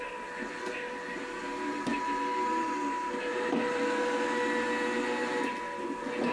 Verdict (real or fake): real